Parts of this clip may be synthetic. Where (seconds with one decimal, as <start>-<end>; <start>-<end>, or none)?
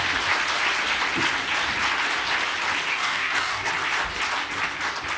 2.9-3.7